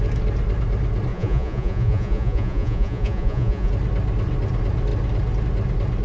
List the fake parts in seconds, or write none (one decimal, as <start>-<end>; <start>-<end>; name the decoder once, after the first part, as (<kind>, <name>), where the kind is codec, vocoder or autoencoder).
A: 1.1-3.7 (vocoder, Vocos)